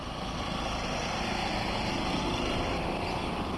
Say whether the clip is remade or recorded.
recorded